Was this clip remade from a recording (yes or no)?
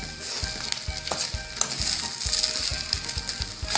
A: no